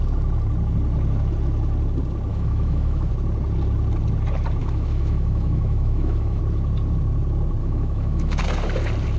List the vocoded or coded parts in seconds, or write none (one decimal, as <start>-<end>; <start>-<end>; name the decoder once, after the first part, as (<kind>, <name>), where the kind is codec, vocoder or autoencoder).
2.3-3.1 (autoencoder, DAC-VAE); 4.6-6.4; 7.6-8.4